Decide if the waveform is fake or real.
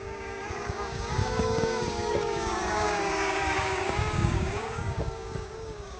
fake